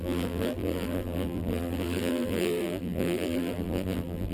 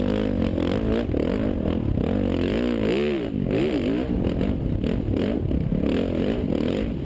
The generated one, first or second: first